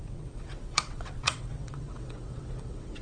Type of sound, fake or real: fake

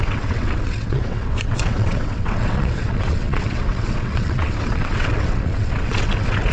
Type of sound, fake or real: fake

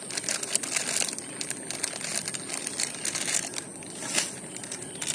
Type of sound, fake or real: real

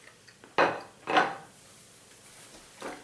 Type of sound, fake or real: real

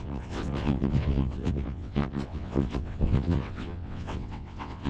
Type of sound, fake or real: fake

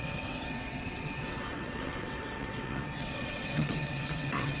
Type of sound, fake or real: fake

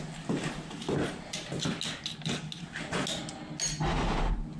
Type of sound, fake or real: real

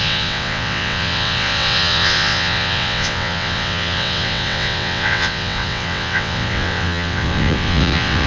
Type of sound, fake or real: fake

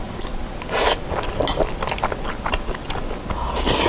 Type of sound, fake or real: real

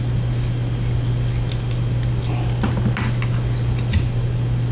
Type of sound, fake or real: real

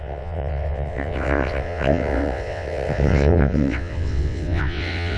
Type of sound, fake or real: fake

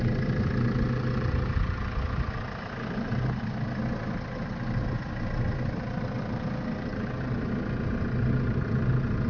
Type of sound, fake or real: real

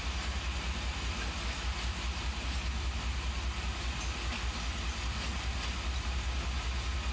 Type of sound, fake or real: real